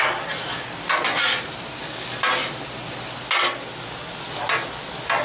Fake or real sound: real